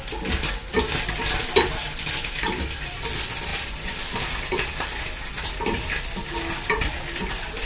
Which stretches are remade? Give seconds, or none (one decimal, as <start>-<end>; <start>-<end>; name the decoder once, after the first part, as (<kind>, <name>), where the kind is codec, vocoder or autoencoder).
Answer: none